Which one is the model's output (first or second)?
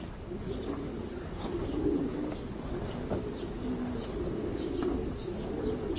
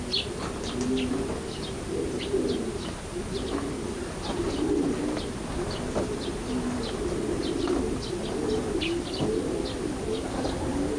first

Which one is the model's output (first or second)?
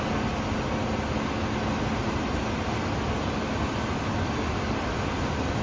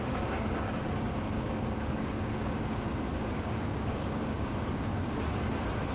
second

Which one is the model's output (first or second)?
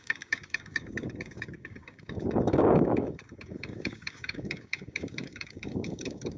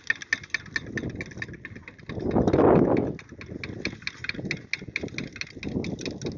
first